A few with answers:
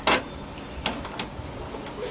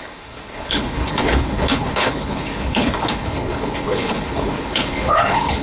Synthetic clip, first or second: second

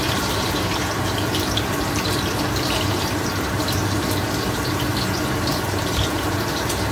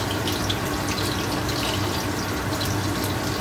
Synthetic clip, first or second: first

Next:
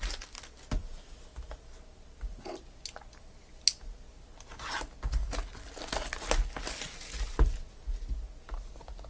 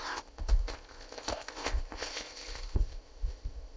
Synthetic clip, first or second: second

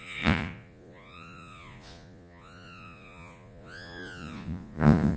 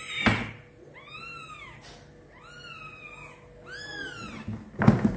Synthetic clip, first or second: first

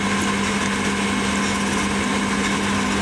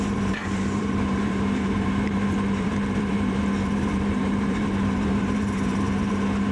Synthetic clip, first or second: second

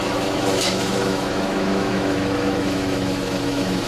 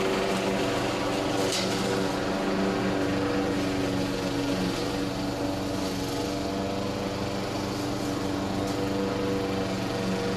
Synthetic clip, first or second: first